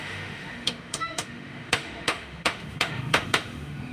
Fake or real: fake